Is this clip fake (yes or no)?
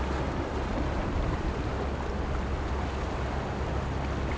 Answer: no